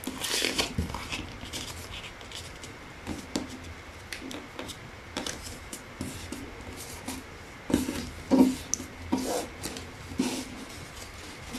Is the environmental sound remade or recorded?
recorded